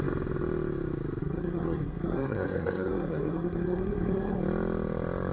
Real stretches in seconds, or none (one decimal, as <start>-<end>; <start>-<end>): 0.0-1.2; 4.4-5.3